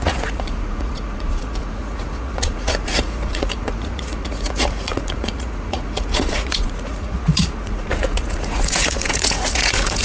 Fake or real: fake